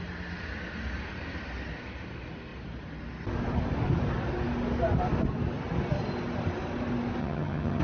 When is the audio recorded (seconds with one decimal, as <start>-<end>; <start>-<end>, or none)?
0.0-7.2

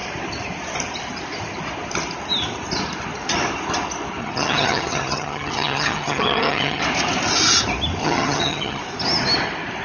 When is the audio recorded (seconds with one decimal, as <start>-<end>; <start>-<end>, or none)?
0.0-4.2; 6.8-8.0; 8.8-9.8

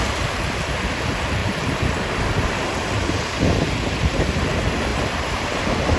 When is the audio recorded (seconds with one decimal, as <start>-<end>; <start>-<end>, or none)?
0.0-1.4; 2.6-3.0; 4.5-4.9; 5.6-6.0

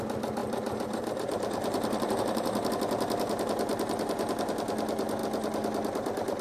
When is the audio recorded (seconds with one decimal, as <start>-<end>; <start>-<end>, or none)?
0.0-0.4; 2.7-6.4